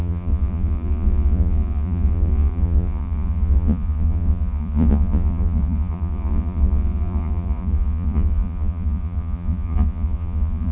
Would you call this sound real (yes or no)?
no